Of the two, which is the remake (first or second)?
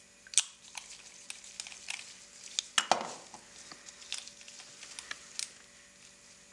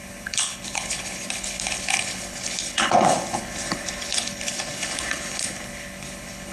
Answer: second